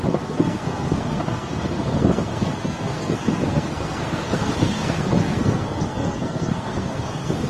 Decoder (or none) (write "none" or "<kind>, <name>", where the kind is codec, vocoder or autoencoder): codec, SNAC